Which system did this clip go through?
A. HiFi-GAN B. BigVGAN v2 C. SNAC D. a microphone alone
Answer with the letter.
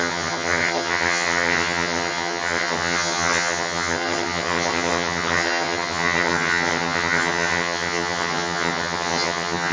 A